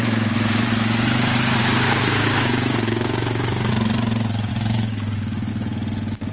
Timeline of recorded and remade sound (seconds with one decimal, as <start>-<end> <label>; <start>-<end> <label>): 0.0-1.6 recorded; 1.6-3.7 remade; 3.7-4.5 recorded; 4.5-5.5 remade; 5.5-6.3 recorded